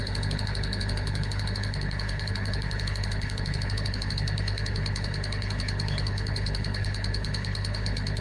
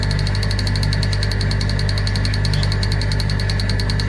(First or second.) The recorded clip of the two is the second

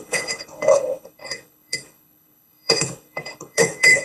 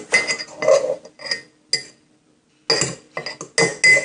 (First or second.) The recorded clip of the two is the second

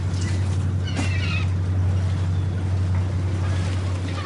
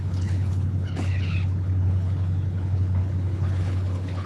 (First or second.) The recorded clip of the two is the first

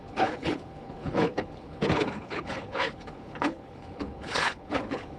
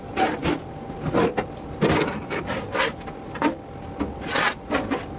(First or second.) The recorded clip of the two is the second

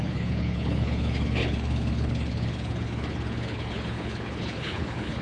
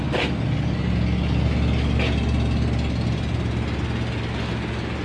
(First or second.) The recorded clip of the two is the second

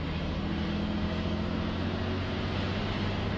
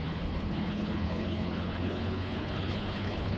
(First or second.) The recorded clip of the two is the first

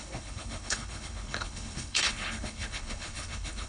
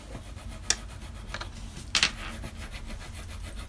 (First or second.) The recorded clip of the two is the second